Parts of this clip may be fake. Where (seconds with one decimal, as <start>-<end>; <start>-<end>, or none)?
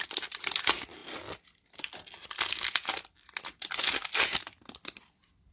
1.0-2.0